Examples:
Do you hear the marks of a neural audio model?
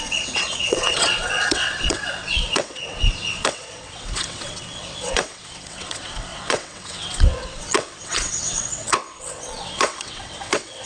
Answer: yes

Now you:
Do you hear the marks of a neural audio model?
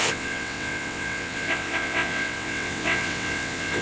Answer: yes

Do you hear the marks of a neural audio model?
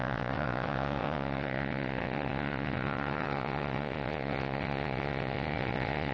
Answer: yes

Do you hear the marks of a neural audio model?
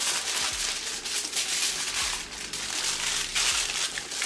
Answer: no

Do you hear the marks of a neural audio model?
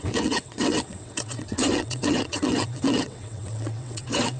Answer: yes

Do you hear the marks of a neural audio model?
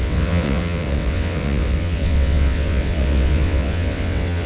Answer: yes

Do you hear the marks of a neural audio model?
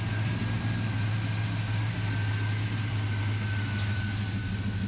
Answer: no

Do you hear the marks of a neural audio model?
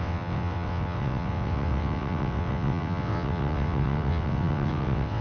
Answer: yes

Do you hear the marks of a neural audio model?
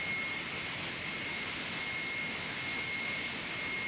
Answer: no